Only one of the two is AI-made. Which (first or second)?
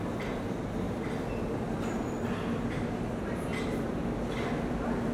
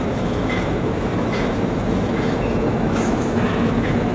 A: second